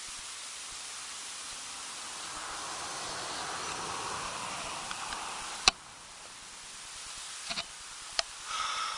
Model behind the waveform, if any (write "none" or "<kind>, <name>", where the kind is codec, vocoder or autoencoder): vocoder, BigVGAN v2